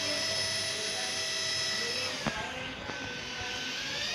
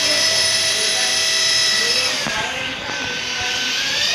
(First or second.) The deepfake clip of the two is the second